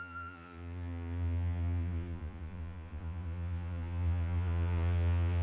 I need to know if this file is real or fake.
fake